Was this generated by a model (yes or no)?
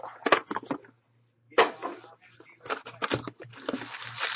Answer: no